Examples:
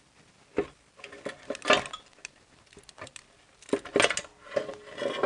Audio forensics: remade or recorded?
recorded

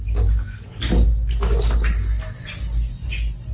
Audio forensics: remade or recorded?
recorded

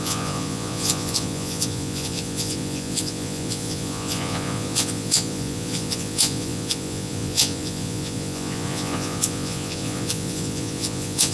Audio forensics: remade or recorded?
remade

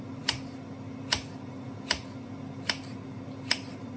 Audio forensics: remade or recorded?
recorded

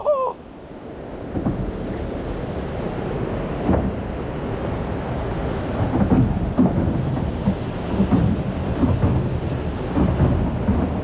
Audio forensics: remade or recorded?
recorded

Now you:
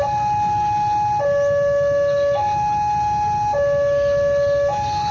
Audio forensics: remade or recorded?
recorded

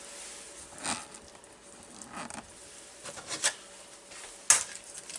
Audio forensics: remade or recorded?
recorded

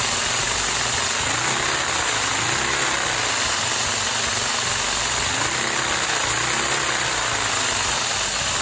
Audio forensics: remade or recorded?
recorded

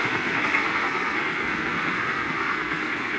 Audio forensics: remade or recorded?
remade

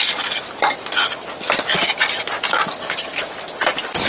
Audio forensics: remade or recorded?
recorded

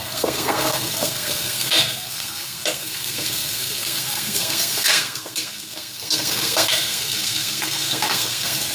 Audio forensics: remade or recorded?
remade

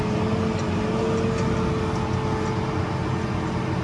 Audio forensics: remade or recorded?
recorded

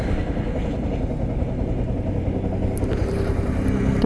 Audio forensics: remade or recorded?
recorded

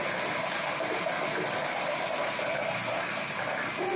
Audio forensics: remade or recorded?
recorded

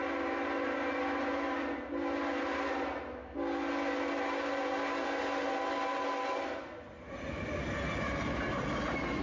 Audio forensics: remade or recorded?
recorded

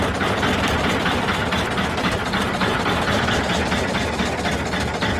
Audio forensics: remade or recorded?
recorded